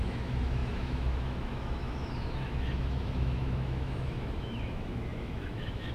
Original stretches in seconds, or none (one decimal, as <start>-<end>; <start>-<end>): none